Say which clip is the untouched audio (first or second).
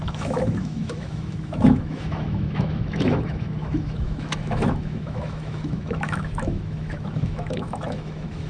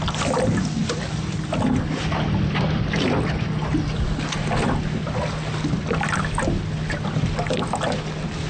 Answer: second